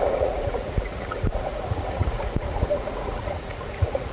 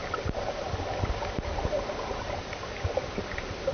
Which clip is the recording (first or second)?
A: second